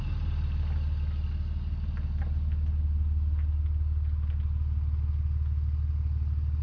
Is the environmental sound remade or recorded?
recorded